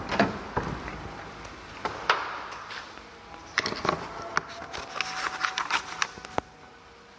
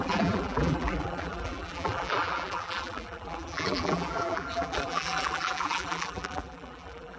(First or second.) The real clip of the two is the first